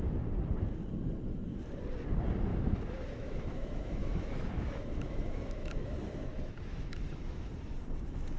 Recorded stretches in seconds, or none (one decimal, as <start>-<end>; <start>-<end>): 0.0-2.5; 7.5-8.4